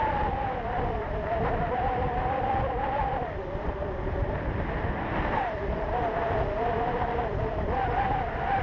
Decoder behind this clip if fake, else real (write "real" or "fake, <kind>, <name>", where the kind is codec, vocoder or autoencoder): real